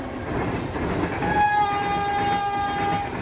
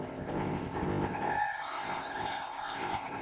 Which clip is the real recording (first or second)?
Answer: first